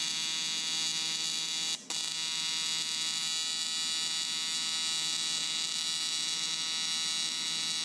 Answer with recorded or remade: recorded